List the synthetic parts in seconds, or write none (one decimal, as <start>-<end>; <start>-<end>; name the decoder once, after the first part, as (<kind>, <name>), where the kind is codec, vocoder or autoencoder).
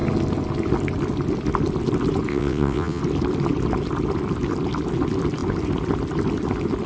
2.3-3.0 (vocoder, WaveNeXt)